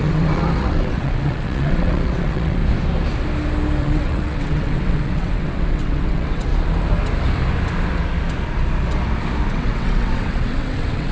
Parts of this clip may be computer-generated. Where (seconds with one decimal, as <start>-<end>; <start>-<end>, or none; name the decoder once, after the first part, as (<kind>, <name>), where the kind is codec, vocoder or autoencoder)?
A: 0.0-2.6 (vocoder, WaveNeXt); 3.8-6.5; 9.5-11.1